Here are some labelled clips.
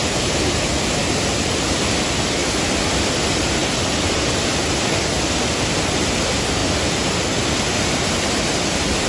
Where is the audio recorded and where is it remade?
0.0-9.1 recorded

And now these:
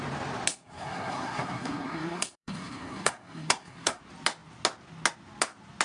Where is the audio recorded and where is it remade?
0.0-0.5 recorded; 0.5-4.0 remade; 4.0-5.8 recorded

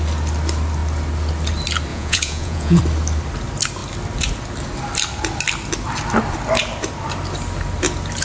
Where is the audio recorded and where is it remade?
0.0-1.9 recorded; 1.9-2.8 remade; 2.8-8.2 recorded

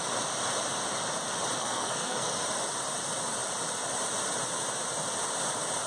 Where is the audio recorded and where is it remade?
0.0-1.6 recorded; 1.6-2.3 remade; 2.3-5.9 recorded

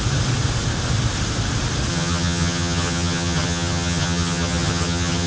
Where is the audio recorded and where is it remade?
0.0-1.9 recorded; 1.9-5.3 remade

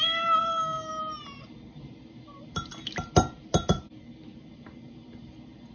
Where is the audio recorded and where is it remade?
0.0-5.7 recorded